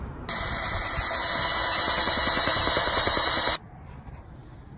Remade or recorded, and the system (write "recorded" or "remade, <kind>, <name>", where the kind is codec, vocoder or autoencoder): recorded